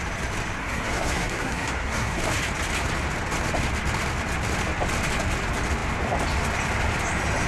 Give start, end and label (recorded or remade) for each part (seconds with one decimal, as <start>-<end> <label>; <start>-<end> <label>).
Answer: 0.0-0.6 recorded; 0.6-2.2 remade; 2.2-7.5 recorded